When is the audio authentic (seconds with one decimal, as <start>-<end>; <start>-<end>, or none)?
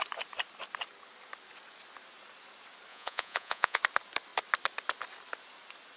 0.0-2.9; 3.8-6.0